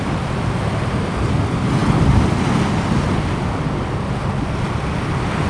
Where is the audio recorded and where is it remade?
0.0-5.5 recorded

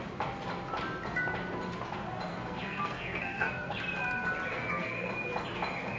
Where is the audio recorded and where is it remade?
0.0-2.3 recorded; 2.3-3.8 remade; 3.8-4.5 recorded; 4.5-5.1 remade; 5.1-6.0 recorded

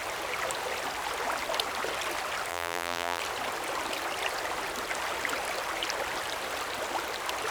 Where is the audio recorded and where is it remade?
0.0-2.5 recorded; 2.5-3.2 remade; 3.2-7.5 recorded

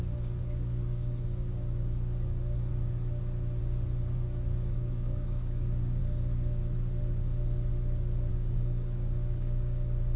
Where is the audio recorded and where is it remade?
0.0-2.7 remade; 2.7-3.6 recorded; 3.6-6.0 remade; 6.0-8.3 recorded; 8.3-10.2 remade

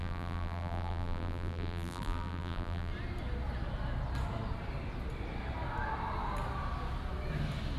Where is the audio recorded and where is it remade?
0.0-2.9 remade; 2.9-7.8 recorded

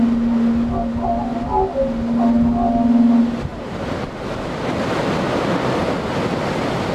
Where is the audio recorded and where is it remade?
0.0-3.5 recorded; 3.5-5.0 remade; 5.0-6.9 recorded